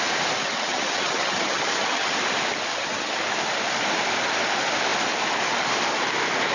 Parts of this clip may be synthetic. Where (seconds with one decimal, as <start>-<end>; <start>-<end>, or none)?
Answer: 0.4-2.1; 2.7-3.2